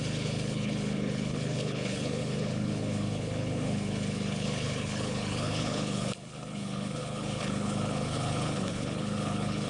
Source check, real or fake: fake